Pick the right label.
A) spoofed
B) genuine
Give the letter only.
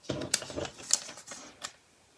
B